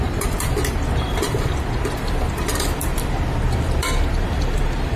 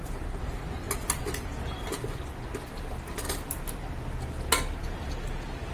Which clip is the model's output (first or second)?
first